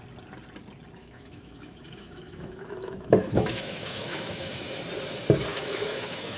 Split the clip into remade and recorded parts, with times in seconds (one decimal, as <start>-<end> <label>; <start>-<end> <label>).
0.0-1.0 recorded; 1.0-4.8 remade; 4.8-5.5 recorded; 5.5-6.4 remade